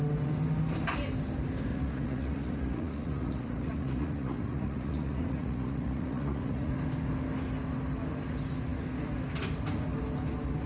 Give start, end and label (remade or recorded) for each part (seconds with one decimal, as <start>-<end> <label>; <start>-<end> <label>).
0.0-1.7 recorded; 1.7-6.7 remade; 6.7-10.7 recorded

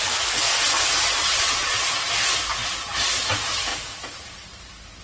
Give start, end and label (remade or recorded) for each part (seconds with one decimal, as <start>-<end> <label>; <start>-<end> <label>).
0.0-1.2 recorded; 1.2-1.7 remade; 1.7-5.0 recorded